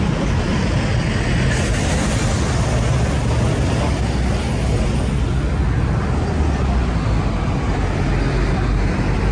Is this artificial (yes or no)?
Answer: no